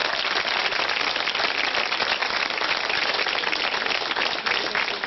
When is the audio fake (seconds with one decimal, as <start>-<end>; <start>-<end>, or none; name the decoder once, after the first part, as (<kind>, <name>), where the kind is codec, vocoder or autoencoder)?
none

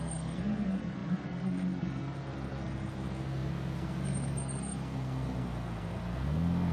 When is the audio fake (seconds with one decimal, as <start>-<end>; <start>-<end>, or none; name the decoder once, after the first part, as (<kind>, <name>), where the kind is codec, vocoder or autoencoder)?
0.0-6.7 (codec, SNAC)

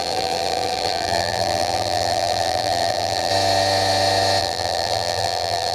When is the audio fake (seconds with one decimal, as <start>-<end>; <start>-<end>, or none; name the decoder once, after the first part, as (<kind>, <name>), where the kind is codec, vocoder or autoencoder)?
0.0-3.3 (vocoder, BigVGAN v2); 4.4-5.7